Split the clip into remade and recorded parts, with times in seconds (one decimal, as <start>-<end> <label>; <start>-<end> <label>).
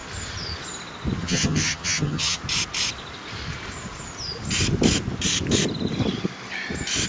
0.0-1.2 recorded; 1.2-2.4 remade; 2.4-7.1 recorded